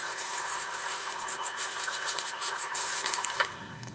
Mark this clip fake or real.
fake